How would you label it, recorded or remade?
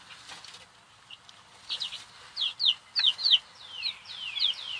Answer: recorded